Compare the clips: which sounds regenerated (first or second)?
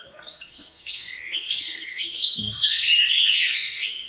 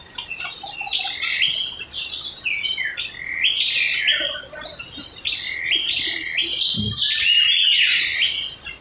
first